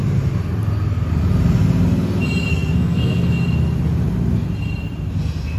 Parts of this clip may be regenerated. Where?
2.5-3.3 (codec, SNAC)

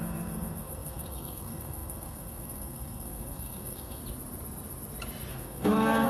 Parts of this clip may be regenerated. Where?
0.0-4.0 (codec, SNAC); 5.3-6.1